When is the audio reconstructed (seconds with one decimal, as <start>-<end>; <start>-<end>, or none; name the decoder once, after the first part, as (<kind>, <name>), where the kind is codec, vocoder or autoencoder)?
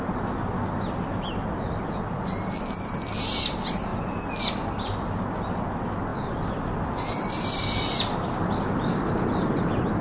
6.1-8.5 (vocoder, BigVGAN v2)